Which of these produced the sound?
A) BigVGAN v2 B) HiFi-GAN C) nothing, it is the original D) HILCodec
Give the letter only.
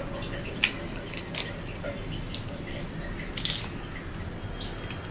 C